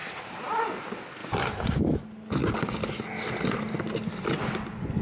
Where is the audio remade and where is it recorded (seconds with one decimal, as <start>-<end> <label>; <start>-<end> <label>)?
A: 0.0-0.5 remade; 0.5-1.2 recorded; 1.2-1.8 remade; 1.8-5.0 recorded